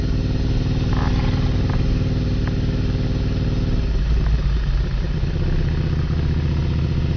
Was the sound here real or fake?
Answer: real